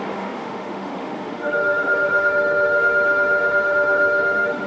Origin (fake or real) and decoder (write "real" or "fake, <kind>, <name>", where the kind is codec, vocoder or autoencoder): fake, autoencoder, DAC-VAE